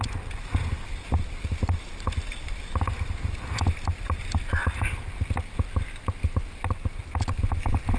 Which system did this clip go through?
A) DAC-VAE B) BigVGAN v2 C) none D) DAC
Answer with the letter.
C